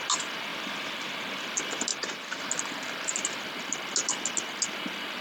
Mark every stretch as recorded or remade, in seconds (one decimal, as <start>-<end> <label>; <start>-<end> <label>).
0.0-0.5 recorded; 0.5-1.4 remade; 1.4-1.9 recorded; 1.9-2.4 remade; 2.4-5.2 recorded